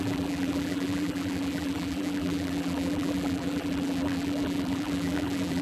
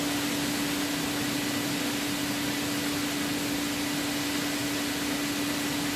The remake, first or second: first